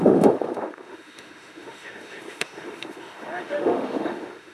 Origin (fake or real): fake